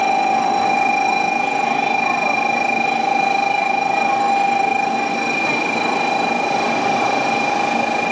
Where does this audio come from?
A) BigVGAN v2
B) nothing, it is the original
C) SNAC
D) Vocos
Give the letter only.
A